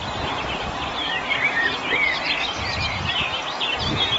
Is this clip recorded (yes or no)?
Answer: yes